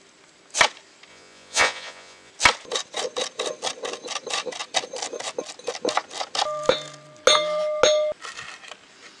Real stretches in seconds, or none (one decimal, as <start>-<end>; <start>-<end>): 0.0-1.1; 2.3-9.2